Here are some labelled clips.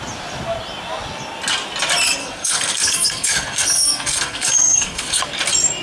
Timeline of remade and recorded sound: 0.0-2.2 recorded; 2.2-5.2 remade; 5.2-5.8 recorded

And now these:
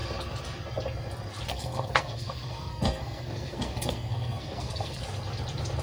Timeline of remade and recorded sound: 0.0-1.5 recorded; 1.5-5.0 remade; 5.0-5.8 recorded